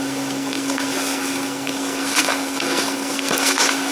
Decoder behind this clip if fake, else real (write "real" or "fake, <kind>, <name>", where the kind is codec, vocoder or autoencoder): fake, codec, SNAC